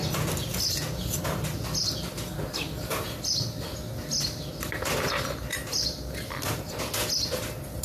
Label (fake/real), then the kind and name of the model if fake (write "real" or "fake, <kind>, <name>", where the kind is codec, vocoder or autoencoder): real